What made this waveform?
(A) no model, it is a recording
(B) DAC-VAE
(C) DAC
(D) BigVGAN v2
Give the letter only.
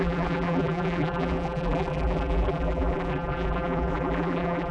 D